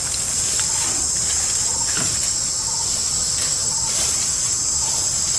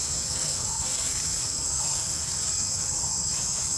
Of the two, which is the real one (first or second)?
first